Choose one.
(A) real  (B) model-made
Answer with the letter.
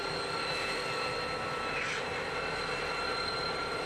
A